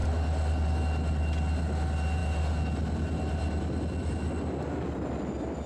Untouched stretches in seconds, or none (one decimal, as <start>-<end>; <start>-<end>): 0.0-5.7